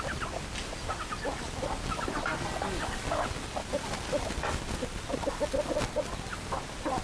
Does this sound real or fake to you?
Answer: real